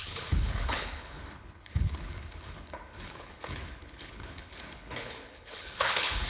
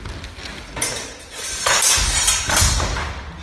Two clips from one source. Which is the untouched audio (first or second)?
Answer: second